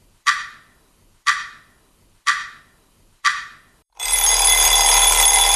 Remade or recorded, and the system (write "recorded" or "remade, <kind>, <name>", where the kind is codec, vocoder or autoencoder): remade, vocoder, BigVGAN v2